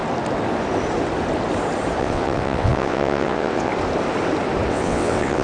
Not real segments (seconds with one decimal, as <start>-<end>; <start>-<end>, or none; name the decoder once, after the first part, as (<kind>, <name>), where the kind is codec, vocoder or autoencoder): 2.0-3.7 (vocoder, WaveNeXt); 4.7-5.4